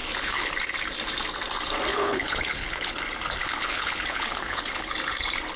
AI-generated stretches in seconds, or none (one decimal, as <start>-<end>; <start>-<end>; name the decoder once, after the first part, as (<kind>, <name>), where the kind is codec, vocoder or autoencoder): 0.0-0.5 (codec, HILCodec); 1.9-3.0; 3.4-4.9